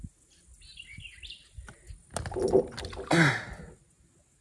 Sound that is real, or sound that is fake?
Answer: real